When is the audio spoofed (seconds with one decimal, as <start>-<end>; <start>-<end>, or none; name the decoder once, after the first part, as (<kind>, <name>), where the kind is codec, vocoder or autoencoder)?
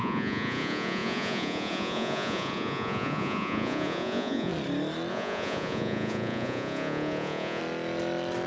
0.0-4.5 (vocoder, Vocos); 5.1-7.6